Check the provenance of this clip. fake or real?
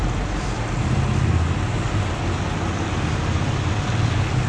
real